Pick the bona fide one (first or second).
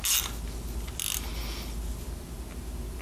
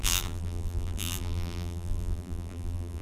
first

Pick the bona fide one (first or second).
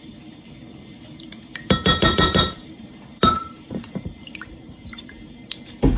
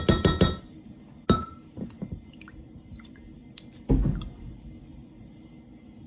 second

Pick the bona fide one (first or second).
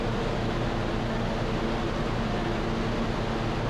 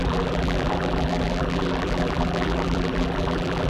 first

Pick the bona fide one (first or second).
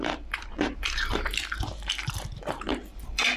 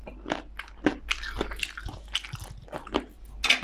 second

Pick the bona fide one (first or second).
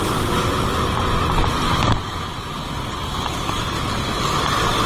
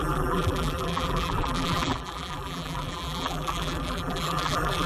first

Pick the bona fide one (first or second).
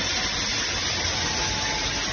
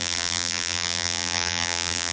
first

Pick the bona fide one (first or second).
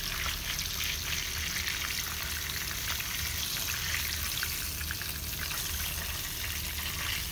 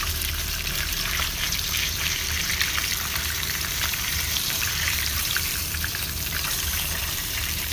first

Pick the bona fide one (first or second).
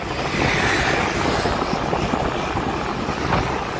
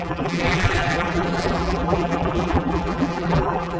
first